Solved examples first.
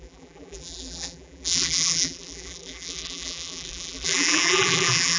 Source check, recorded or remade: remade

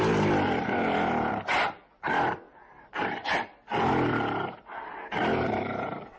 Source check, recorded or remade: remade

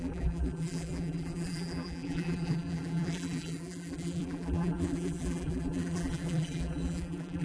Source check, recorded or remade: remade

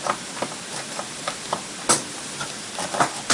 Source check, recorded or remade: remade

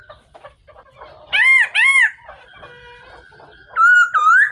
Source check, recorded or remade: recorded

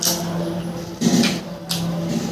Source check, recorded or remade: recorded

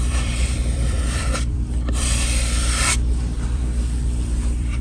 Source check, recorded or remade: remade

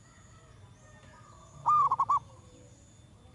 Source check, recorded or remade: recorded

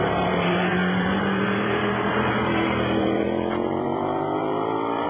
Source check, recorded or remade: remade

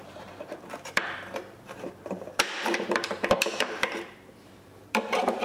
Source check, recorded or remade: remade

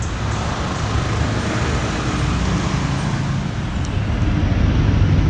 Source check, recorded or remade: recorded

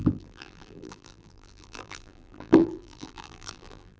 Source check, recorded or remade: remade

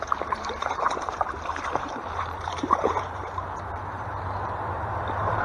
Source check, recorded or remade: remade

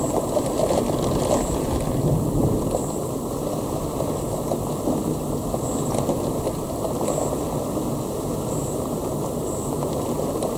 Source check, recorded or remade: recorded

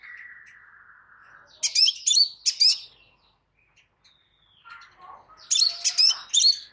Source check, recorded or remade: recorded